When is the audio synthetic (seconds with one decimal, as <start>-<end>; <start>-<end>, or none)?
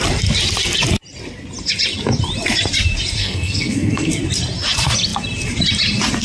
3.2-4.1